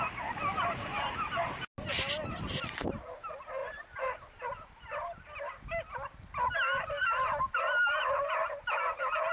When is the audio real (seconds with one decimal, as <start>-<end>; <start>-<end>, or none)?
0.0-0.5; 1.4-9.3